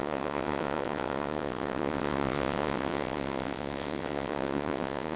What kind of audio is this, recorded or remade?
remade